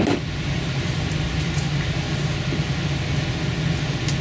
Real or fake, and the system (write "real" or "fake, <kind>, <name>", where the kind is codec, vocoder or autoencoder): real